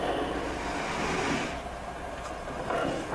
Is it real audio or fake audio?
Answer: real